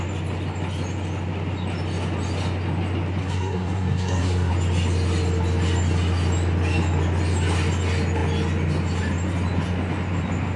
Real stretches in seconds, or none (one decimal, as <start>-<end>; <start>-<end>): 0.0-3.2; 4.5-10.6